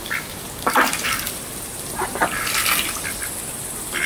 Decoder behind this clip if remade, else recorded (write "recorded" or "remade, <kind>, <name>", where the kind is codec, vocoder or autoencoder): recorded